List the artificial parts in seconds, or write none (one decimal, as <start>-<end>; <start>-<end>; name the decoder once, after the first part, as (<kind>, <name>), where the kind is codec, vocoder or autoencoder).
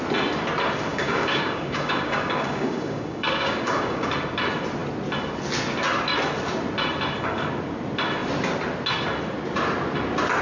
0.9-4.1 (codec, DAC)